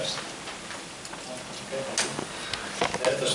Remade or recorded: recorded